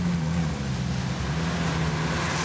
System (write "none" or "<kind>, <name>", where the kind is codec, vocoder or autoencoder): none